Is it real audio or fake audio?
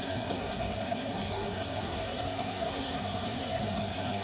fake